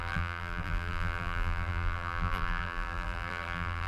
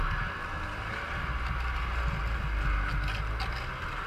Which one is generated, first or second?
first